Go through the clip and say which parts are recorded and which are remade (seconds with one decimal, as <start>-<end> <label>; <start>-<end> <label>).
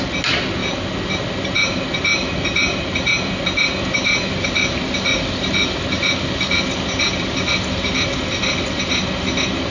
0.0-9.7 recorded